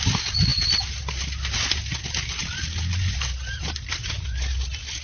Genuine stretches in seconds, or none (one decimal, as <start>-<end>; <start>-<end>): 0.0-5.0